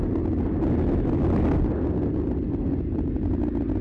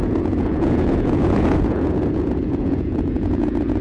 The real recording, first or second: first